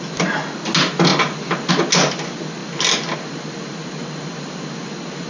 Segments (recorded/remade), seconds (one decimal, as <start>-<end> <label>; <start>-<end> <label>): 0.0-5.3 recorded